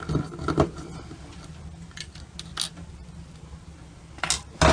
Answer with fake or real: real